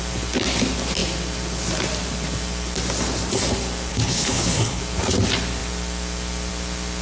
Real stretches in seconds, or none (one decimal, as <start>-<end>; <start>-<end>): 0.0-3.9; 4.8-7.0